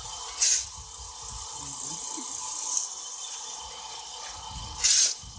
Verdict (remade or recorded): recorded